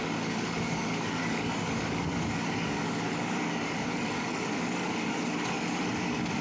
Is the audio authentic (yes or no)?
no